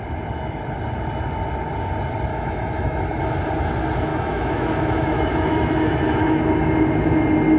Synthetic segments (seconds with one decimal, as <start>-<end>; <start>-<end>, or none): 2.3-3.0; 4.1-6.4